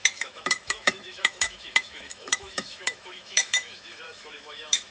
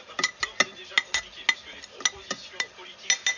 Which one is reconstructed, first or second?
first